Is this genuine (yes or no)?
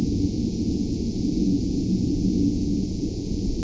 no